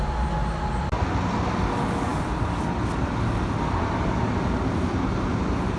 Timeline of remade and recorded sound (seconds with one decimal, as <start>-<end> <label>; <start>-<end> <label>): 0.0-5.8 recorded